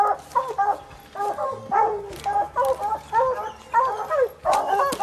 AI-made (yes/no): no